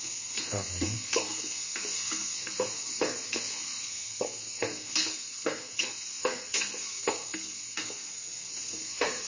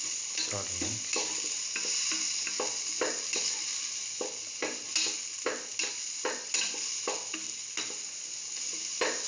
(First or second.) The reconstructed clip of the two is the first